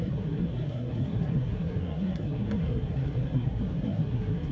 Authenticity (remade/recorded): remade